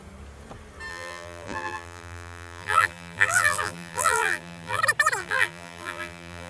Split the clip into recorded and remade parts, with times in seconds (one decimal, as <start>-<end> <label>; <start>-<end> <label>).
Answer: 0.0-0.9 recorded; 0.9-4.8 remade; 4.8-5.2 recorded; 5.2-6.5 remade